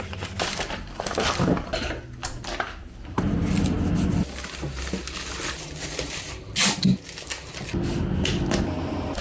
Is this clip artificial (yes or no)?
no